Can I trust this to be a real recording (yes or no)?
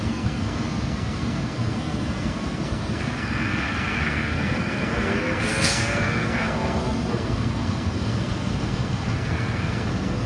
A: no